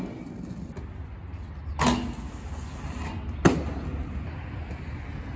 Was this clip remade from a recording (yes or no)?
no